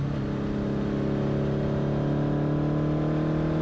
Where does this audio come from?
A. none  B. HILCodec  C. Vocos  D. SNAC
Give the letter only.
A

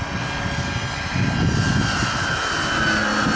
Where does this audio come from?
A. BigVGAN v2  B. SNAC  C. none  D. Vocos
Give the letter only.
C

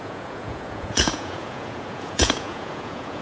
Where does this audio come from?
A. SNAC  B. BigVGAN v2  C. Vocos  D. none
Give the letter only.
C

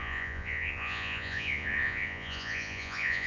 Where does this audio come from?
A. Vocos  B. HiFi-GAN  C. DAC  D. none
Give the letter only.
A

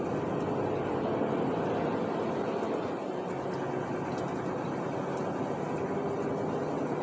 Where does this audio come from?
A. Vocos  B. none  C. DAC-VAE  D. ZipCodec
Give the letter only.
B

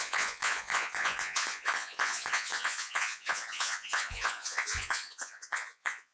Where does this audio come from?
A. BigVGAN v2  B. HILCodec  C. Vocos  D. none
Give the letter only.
C